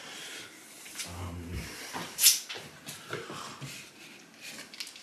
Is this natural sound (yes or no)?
yes